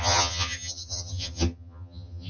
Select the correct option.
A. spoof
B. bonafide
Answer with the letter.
A